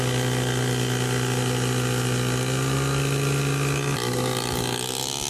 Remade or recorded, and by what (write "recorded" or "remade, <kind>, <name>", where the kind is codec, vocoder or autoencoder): recorded